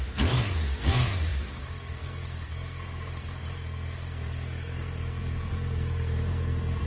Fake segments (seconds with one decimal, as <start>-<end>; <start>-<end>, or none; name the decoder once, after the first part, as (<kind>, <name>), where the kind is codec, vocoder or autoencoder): 0.0-6.9 (codec, SNAC)